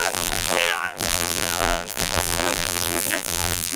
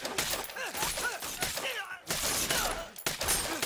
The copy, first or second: first